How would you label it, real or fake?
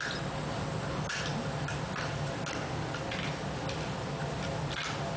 real